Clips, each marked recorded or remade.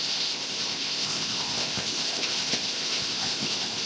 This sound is remade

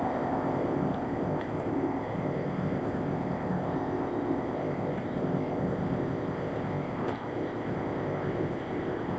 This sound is remade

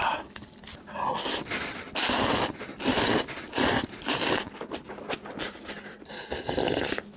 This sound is recorded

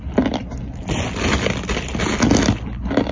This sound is recorded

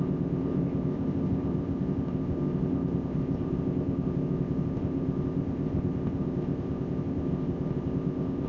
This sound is remade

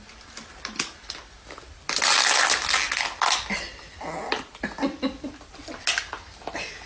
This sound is recorded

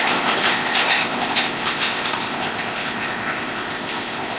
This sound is remade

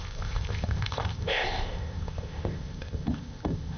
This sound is remade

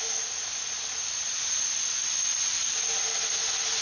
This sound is recorded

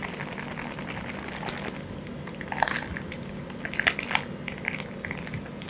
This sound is recorded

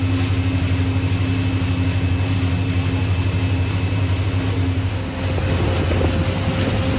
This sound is recorded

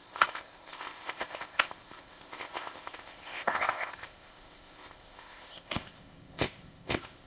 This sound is remade